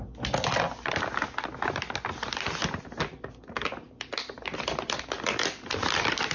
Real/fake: real